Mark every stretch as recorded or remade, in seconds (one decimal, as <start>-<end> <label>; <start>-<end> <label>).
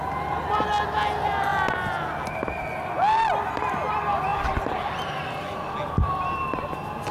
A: 0.0-7.1 recorded